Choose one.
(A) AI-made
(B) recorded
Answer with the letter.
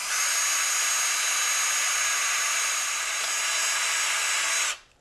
B